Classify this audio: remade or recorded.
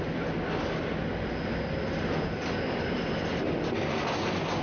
recorded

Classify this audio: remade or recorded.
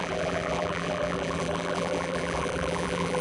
remade